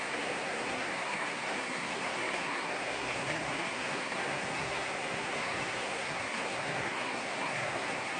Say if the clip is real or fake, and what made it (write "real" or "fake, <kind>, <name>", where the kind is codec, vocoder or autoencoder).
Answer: fake, codec, SNAC